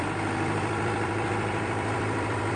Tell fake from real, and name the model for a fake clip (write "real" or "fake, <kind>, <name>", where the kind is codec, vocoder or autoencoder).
fake, vocoder, BigVGAN v2